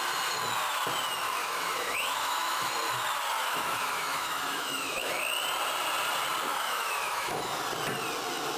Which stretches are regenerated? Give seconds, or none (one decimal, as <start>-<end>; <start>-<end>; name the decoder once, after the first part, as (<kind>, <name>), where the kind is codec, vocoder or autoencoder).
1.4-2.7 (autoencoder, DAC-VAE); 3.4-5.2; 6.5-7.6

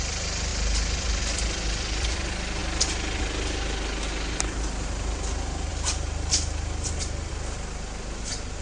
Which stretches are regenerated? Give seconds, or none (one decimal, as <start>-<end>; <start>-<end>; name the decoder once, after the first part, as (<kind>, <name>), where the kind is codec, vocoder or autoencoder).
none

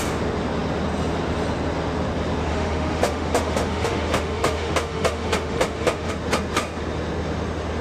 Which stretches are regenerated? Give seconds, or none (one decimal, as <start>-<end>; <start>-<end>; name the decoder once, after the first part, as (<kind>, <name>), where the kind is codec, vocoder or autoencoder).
2.5-6.1 (autoencoder, DAC-VAE)